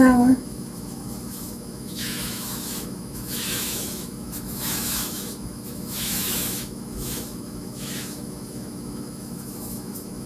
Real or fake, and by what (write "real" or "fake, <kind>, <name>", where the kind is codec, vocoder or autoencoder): fake, autoencoder, DAC-VAE